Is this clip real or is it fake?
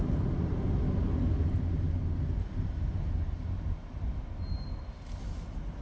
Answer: real